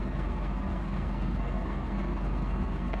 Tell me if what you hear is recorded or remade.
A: remade